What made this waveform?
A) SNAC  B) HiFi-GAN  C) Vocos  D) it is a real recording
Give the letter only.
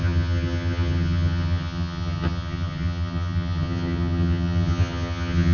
B